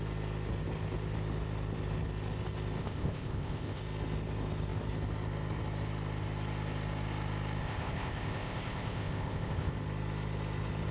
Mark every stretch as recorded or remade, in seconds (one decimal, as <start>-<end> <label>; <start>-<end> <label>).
0.0-2.8 recorded; 2.8-3.8 remade; 3.8-7.6 recorded; 7.6-9.7 remade; 9.7-10.9 recorded